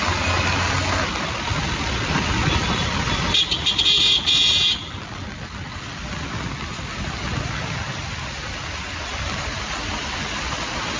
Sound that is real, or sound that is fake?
real